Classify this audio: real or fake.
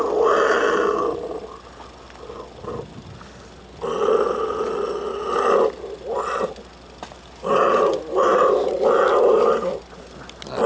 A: real